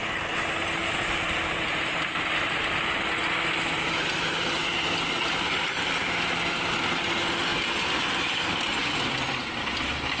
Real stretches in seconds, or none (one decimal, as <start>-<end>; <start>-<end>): 0.0-0.8; 2.8-10.2